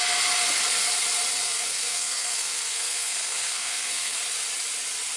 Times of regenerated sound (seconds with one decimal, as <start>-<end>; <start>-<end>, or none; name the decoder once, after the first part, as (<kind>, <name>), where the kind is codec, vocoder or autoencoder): 1.4-4.2 (codec, SNAC)